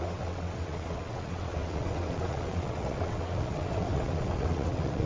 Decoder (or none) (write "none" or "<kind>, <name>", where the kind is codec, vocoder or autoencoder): vocoder, WaveNeXt